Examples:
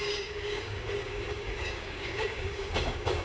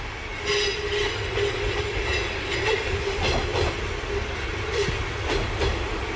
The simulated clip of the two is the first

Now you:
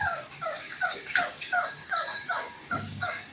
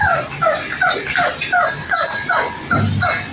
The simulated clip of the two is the first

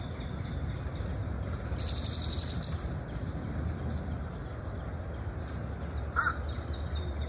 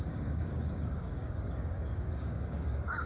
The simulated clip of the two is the second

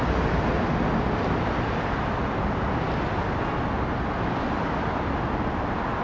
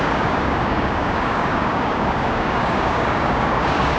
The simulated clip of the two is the second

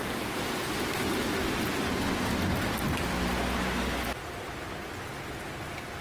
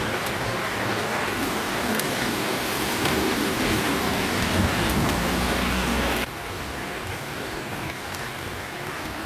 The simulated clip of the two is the second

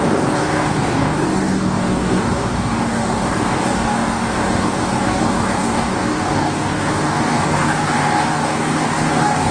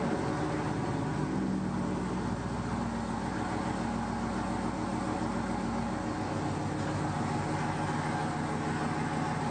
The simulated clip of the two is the first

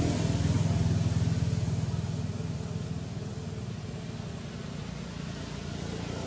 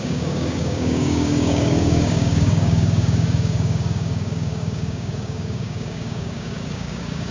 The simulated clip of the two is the second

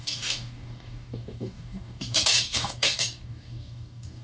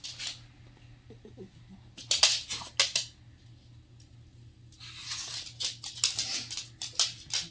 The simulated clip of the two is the first